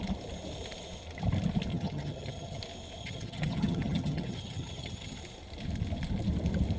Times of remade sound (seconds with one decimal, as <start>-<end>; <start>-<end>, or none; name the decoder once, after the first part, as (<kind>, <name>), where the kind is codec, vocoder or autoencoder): 1.7-2.6 (vocoder, HiFi-GAN); 3.0-5.2

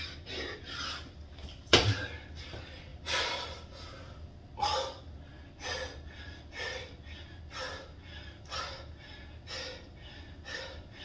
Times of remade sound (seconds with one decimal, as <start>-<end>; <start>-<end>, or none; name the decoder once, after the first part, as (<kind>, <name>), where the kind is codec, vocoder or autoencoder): none